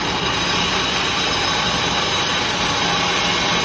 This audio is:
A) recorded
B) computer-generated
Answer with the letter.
A